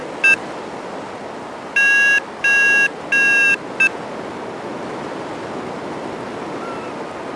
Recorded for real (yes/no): yes